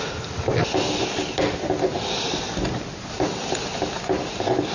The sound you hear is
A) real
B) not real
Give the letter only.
A